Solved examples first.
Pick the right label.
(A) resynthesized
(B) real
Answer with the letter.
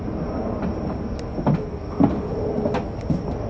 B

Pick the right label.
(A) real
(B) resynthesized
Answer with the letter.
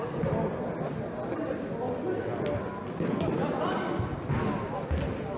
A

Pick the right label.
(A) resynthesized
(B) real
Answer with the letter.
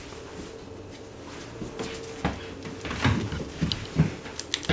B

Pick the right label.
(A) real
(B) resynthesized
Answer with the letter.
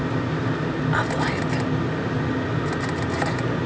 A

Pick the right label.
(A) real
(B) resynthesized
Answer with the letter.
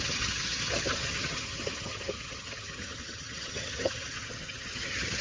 B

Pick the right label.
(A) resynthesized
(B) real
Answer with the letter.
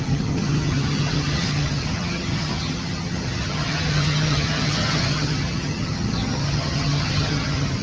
A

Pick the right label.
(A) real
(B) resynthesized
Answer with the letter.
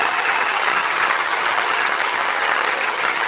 B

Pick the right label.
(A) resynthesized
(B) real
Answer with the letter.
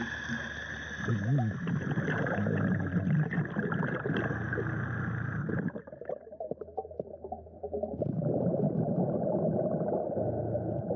B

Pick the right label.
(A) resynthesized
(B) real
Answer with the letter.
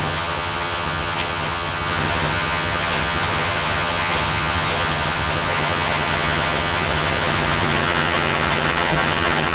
A